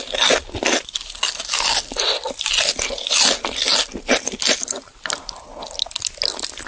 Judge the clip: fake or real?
real